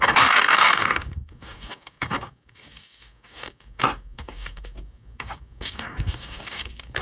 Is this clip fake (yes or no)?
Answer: yes